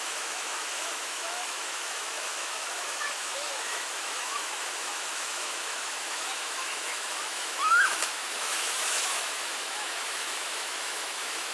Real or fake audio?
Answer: fake